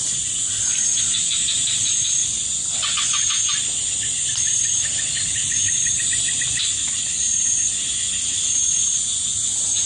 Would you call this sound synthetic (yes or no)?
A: no